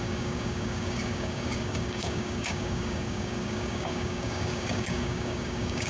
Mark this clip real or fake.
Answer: fake